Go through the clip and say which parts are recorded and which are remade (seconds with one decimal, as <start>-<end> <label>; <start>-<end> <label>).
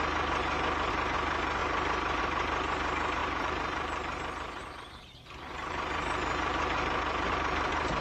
0.0-3.2 recorded; 3.2-8.0 remade